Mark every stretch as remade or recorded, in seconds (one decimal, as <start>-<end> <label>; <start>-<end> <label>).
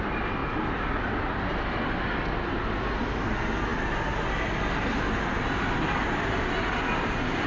0.0-7.5 recorded